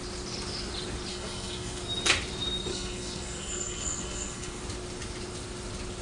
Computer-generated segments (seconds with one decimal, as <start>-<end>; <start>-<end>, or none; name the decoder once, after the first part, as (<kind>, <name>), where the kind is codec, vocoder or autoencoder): 1.1-1.8 (codec, SNAC); 2.7-4.6